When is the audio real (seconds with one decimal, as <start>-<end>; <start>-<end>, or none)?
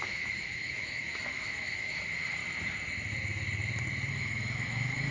2.4-4.1